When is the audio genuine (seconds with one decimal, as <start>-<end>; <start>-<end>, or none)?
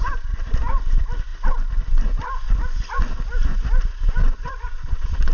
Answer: 0.0-4.2